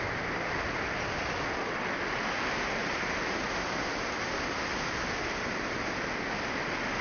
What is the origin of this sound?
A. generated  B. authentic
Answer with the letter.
B